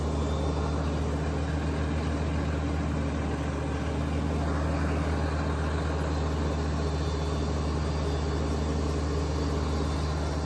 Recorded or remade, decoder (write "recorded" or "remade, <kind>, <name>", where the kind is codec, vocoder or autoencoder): recorded